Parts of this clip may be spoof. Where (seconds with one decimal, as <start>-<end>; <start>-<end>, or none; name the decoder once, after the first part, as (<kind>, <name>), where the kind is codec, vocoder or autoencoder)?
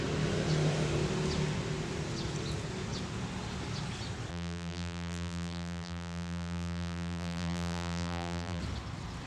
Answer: 4.3-8.6 (vocoder, BigVGAN v2)